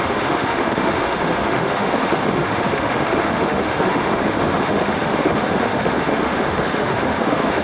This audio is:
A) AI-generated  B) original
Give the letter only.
A